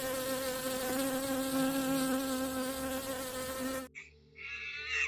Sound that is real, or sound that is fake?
real